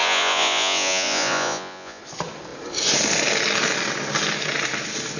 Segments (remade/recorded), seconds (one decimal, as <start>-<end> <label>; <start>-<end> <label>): 0.0-2.0 remade; 2.0-5.2 recorded